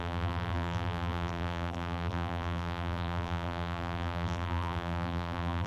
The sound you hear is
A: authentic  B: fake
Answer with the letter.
B